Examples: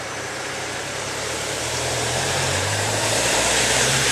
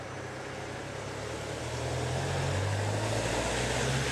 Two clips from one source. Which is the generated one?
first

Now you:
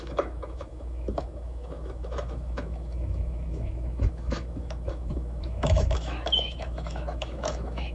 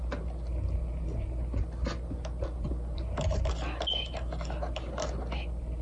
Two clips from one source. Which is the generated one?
first